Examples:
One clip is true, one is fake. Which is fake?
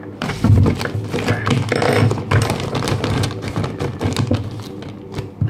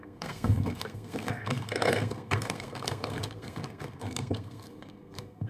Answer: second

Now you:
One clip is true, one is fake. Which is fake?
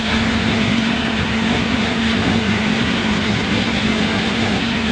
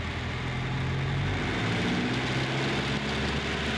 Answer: first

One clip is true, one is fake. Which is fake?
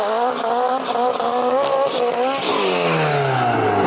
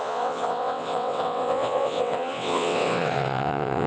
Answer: second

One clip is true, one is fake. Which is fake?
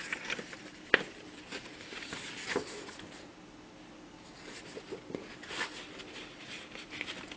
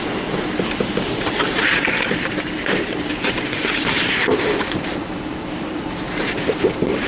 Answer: second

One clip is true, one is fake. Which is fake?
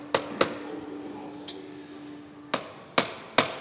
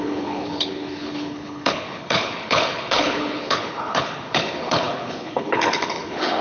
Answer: second